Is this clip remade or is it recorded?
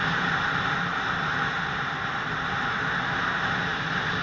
recorded